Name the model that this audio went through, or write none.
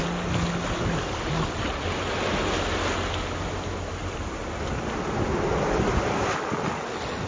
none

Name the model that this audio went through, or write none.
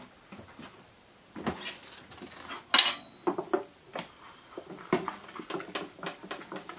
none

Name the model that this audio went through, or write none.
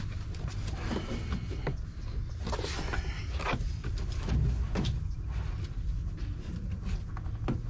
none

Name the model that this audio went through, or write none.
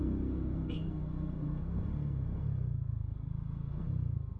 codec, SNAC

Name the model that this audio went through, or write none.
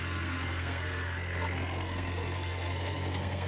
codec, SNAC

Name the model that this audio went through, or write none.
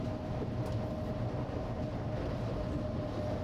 none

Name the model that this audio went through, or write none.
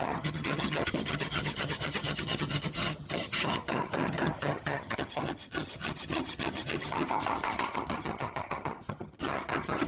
vocoder, HiFi-GAN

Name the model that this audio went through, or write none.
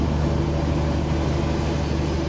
none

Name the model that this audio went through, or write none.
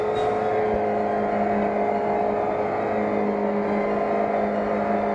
none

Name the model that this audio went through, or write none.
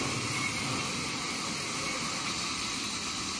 none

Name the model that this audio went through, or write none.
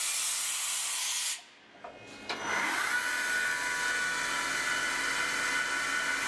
none